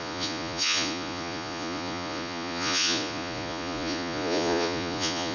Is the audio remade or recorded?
remade